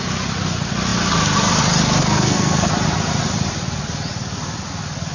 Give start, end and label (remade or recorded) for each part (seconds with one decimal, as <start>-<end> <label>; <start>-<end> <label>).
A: 0.0-2.0 recorded; 2.0-2.7 remade; 2.7-5.1 recorded